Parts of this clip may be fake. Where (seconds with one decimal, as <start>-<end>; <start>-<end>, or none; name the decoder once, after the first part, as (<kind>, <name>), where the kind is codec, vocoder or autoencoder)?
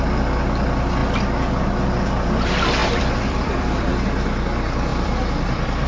2.8-3.9 (vocoder, BigVGAN v2); 4.9-5.9